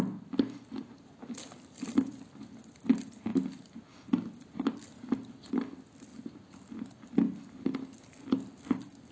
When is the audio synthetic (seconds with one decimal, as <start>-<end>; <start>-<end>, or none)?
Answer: none